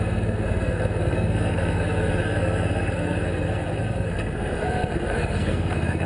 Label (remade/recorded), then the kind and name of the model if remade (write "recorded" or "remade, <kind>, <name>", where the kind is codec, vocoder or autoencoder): remade, codec, SNAC